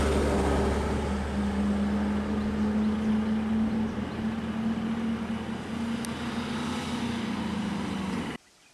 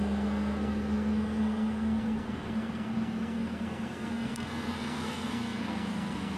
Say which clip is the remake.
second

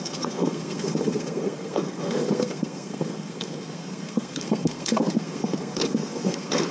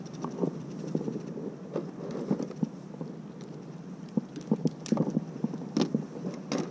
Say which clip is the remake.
first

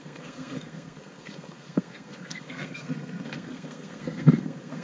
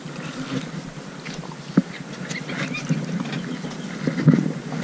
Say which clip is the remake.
first